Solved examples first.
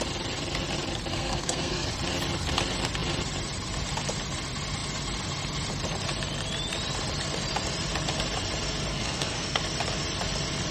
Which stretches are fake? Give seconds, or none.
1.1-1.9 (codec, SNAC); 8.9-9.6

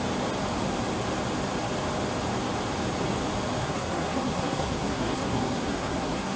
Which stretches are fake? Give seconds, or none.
3.6-6.4 (codec, SNAC)

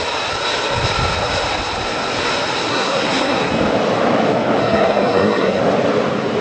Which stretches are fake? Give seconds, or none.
2.7-3.5 (codec, SNAC); 4.6-5.6

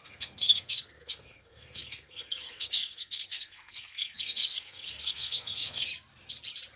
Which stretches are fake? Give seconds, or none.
0.0-5.9 (codec, SNAC)

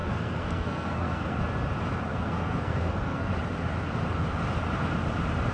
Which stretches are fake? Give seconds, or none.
0.0-1.4 (codec, SNAC); 2.1-3.3